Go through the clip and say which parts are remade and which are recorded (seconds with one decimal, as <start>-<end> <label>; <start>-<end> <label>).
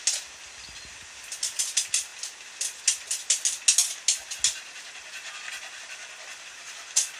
0.0-7.2 recorded